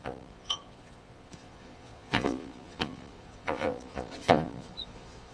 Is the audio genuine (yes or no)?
no